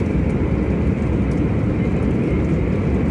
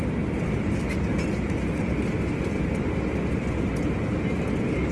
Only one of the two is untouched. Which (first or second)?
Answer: second